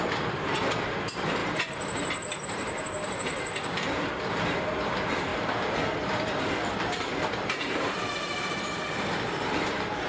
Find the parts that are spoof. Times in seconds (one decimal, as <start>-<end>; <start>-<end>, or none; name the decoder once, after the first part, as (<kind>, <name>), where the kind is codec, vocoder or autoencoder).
0.0-5.3 (vocoder, BigVGAN v2); 6.4-10.1